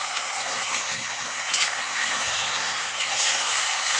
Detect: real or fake fake